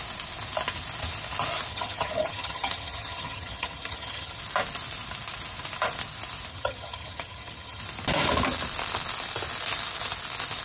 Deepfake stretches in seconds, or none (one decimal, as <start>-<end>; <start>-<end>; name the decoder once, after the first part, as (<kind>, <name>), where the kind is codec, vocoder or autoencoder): 1.7-4.4 (vocoder, HiFi-GAN); 6.5-7.8